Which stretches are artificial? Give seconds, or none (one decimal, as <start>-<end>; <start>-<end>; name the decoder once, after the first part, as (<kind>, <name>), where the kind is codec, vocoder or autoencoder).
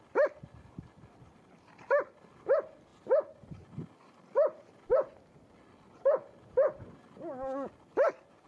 none